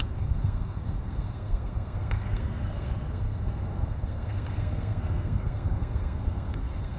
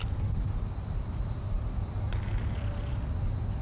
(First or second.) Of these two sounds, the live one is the second